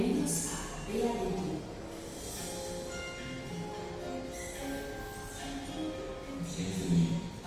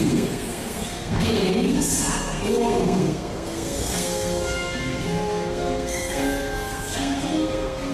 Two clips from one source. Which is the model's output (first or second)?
second